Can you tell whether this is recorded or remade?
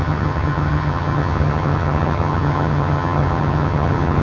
remade